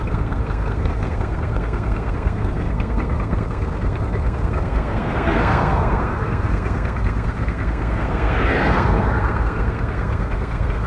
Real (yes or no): no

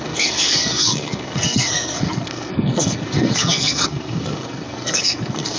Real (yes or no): no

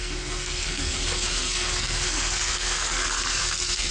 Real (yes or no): no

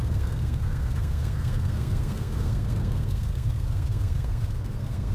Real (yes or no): no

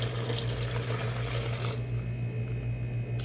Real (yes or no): yes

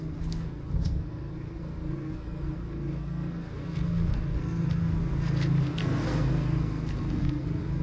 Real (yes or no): no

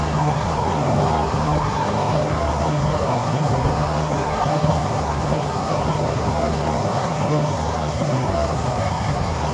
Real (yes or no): no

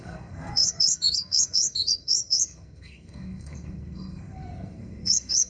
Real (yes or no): no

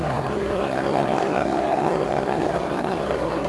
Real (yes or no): no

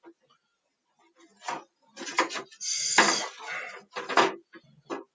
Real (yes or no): yes